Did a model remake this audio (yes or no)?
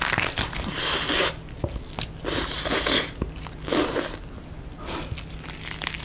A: no